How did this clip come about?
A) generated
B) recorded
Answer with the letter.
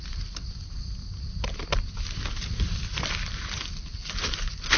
B